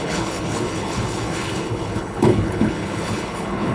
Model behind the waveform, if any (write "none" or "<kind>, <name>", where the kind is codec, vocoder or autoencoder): codec, HILCodec